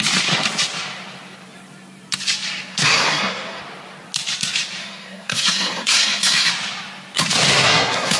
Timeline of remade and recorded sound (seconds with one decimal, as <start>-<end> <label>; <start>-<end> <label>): 0.0-2.7 recorded; 2.7-3.6 remade; 3.6-4.8 recorded; 4.8-6.5 remade; 6.5-7.5 recorded; 7.5-8.2 remade